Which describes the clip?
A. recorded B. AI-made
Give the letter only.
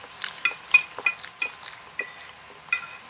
A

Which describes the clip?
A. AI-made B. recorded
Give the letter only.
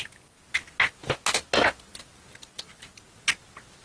B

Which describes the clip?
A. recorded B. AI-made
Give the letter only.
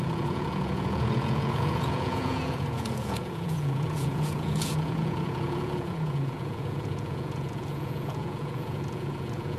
B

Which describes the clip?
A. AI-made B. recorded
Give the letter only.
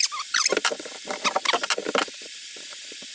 B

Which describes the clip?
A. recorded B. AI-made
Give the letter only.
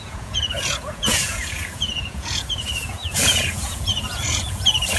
B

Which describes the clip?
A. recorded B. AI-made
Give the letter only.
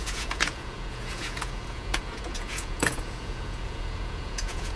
B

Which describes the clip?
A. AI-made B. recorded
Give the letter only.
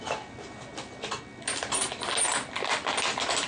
B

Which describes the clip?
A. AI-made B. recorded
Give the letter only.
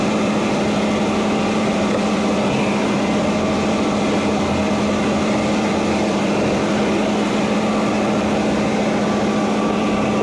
B